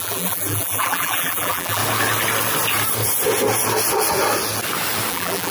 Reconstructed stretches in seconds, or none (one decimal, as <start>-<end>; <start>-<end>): 0.0-1.8; 5.1-5.5